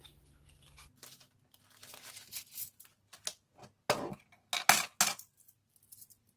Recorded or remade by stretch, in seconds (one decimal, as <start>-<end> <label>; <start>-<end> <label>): 0.0-6.4 recorded